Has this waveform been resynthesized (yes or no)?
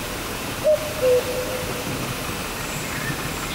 yes